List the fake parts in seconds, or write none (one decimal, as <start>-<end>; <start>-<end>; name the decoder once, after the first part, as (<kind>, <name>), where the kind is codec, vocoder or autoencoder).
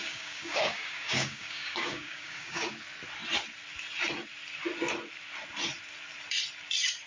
0.0-2.7 (codec, DAC)